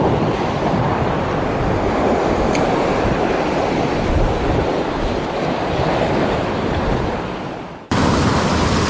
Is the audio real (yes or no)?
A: no